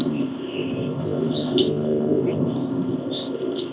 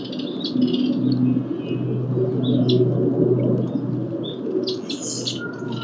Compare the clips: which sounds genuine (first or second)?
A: second